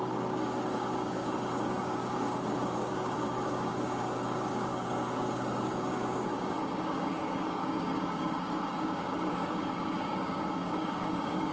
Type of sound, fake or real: fake